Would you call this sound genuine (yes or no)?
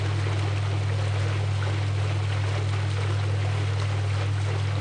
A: yes